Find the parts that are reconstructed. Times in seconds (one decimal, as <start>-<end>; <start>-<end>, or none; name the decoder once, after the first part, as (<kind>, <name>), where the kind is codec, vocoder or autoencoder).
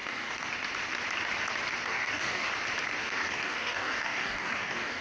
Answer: 0.0-0.5 (codec, DAC); 1.9-2.5; 3.0-5.0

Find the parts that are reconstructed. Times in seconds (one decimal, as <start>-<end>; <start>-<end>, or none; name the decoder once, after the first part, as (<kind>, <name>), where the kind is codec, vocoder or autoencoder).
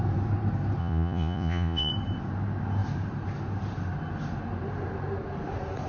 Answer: 0.8-1.9 (vocoder, Vocos)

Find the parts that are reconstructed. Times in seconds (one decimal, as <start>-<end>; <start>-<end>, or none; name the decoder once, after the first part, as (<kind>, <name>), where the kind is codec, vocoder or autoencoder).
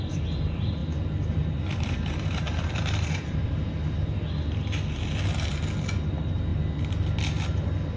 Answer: 0.0-3.8 (vocoder, BigVGAN v2); 6.0-6.5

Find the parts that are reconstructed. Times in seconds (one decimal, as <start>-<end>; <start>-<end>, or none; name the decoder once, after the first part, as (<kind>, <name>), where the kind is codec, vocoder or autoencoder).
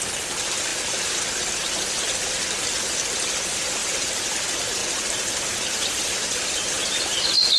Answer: none